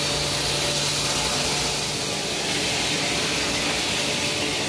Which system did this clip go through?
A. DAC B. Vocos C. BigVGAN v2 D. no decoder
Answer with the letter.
D